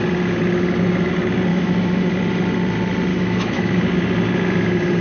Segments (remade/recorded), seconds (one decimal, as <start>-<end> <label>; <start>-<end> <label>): 0.0-1.5 recorded; 1.5-2.1 remade; 2.1-3.1 recorded; 3.1-3.8 remade; 3.8-5.0 recorded